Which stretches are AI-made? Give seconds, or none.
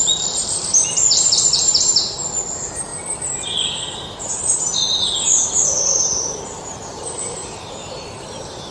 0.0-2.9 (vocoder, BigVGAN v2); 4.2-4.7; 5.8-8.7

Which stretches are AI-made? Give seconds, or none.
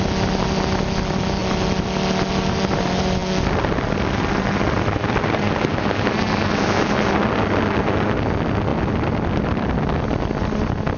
8.7-9.8 (vocoder, BigVGAN v2)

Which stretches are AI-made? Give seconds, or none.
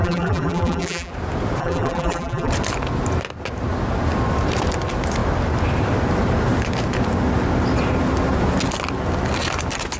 0.0-1.1 (vocoder, BigVGAN v2); 1.6-2.5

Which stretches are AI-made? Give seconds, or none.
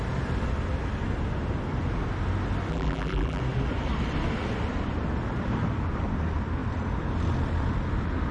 2.7-3.4 (vocoder, BigVGAN v2)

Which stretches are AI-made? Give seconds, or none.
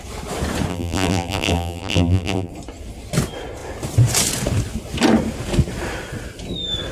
0.7-2.5 (vocoder, BigVGAN v2)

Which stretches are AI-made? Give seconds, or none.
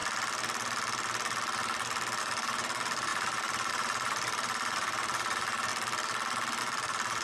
2.2-5.7 (vocoder, BigVGAN v2); 6.6-7.2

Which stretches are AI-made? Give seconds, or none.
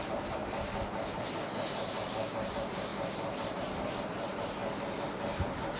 0.0-0.4 (vocoder, BigVGAN v2); 2.0-2.9; 3.5-4.6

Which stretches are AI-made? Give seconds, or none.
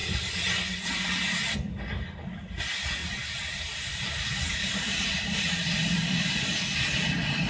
3.0-6.3 (vocoder, BigVGAN v2)